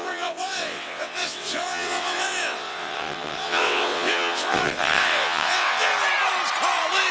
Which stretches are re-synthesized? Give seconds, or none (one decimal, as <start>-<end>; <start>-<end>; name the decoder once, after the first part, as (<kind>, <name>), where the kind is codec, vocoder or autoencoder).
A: 0.0-5.9 (vocoder, WaveNeXt)